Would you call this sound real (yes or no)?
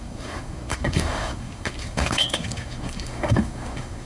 no